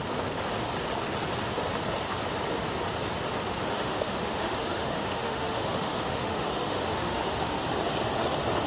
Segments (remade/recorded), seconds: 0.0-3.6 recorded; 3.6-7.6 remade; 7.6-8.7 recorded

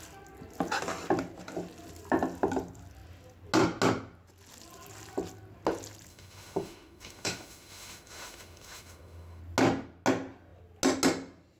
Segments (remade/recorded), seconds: 0.0-6.1 recorded; 6.1-9.4 remade; 9.4-11.6 recorded

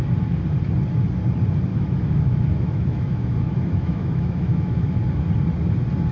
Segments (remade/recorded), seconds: 0.0-1.7 recorded; 1.7-5.0 remade; 5.0-6.1 recorded